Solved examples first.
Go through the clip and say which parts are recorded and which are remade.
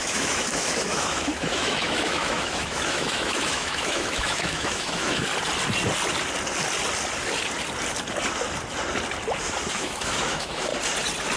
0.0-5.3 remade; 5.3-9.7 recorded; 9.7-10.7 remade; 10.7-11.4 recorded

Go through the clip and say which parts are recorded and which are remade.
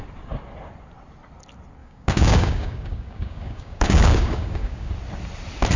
0.0-1.8 recorded; 1.8-4.9 remade; 4.9-5.8 recorded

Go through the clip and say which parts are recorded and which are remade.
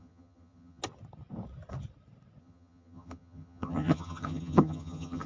0.0-0.8 remade; 0.8-2.4 recorded; 2.4-5.3 remade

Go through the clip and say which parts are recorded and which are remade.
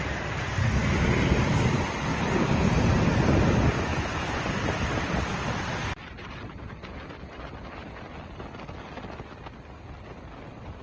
0.0-3.9 recorded; 3.9-4.5 remade; 4.5-10.8 recorded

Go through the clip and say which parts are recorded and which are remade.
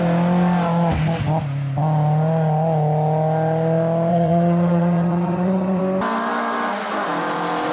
0.0-4.1 recorded; 4.1-5.8 remade; 5.8-7.7 recorded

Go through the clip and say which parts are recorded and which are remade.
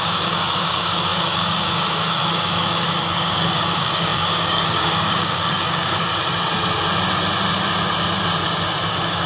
0.0-6.1 remade; 6.1-8.9 recorded; 8.9-9.3 remade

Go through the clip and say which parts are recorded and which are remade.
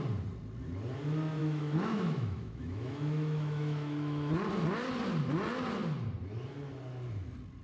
0.0-1.4 recorded; 1.4-4.3 remade; 4.3-7.6 recorded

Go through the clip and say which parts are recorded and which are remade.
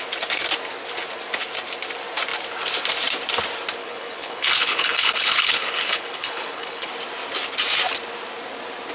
0.0-3.8 recorded; 3.8-6.9 remade; 6.9-8.9 recorded